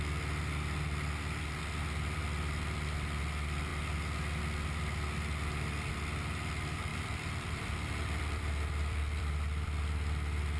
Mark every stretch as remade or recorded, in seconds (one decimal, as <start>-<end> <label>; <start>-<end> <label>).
0.0-6.9 recorded; 6.9-10.6 remade